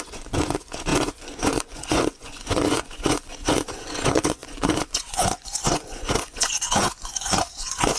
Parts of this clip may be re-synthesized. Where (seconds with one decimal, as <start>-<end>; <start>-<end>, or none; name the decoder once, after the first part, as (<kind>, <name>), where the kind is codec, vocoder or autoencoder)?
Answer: 0.0-8.0 (vocoder, Vocos)